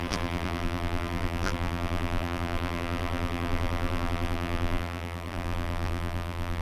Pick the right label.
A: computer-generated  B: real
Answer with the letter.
A